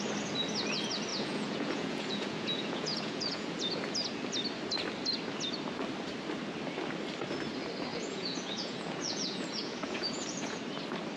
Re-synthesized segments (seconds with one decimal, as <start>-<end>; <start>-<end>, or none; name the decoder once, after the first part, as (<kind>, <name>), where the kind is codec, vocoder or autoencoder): 1.1-3.8 (vocoder, Vocos); 7.9-10.6